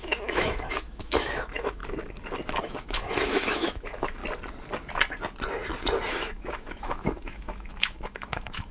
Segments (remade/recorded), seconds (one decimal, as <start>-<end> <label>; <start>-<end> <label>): 0.0-1.8 remade; 1.8-2.6 recorded; 2.6-4.2 remade; 4.2-6.1 recorded; 6.1-8.7 remade